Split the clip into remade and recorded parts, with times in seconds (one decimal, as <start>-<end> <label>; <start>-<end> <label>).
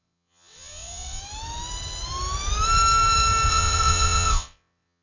0.0-1.2 remade; 1.2-3.5 recorded; 3.5-5.0 remade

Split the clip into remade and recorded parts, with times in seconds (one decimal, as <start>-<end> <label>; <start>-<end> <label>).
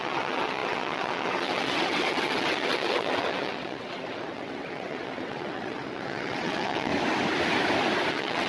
0.0-6.9 remade; 6.9-8.1 recorded; 8.1-8.5 remade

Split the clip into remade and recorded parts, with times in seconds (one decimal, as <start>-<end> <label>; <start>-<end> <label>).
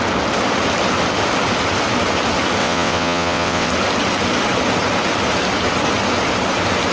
0.0-2.6 recorded; 2.6-3.7 remade; 3.7-6.9 recorded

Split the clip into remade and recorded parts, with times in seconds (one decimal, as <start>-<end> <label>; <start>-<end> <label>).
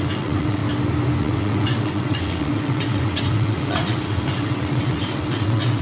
0.0-0.6 remade; 0.6-1.2 recorded; 1.2-5.8 remade